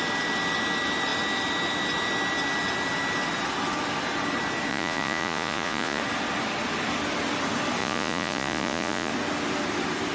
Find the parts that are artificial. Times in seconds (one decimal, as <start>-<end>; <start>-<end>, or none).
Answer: 4.7-6.0; 7.8-9.1